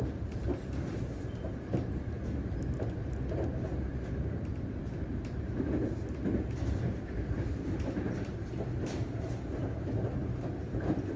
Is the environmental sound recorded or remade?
recorded